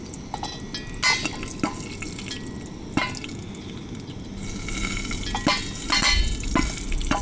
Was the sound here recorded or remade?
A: recorded